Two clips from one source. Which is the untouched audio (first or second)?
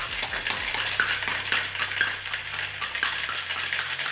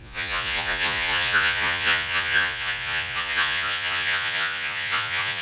first